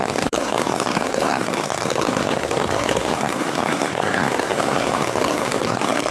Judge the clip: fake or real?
fake